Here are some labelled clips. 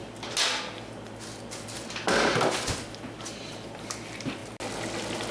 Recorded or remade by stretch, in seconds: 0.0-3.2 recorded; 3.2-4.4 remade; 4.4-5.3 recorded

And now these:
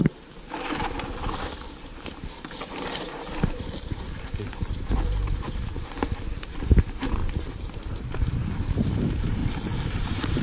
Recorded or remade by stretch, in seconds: 0.0-7.2 remade; 7.2-7.9 recorded; 7.9-9.4 remade; 9.4-9.9 recorded; 9.9-10.4 remade

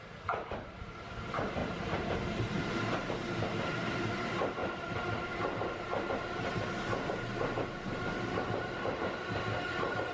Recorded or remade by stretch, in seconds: 0.0-1.6 recorded; 1.6-2.6 remade; 2.6-10.1 recorded

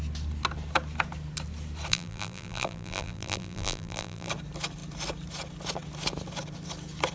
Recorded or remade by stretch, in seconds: 0.0-1.9 recorded; 1.9-4.3 remade; 4.3-7.1 recorded

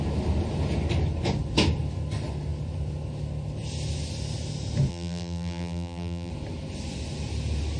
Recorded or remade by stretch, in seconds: 0.0-4.9 recorded; 4.9-6.3 remade; 6.3-7.8 recorded